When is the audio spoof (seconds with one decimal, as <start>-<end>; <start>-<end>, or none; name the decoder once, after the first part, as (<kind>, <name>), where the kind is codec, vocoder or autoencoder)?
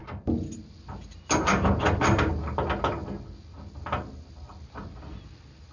none